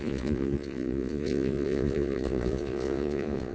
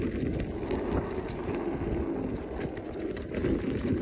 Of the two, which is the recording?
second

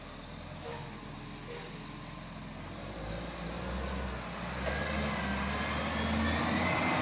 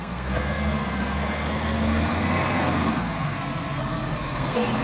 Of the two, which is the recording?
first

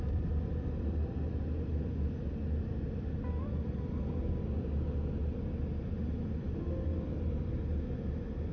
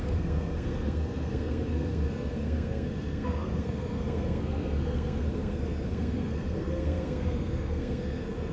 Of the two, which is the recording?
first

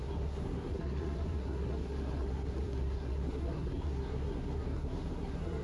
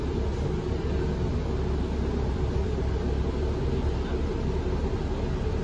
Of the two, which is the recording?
second